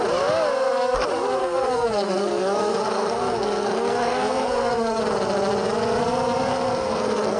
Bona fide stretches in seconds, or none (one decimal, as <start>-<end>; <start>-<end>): 0.0-1.4; 5.0-6.5